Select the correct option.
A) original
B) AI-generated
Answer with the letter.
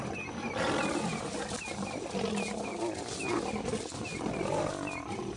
A